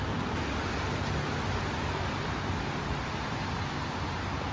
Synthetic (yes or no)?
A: no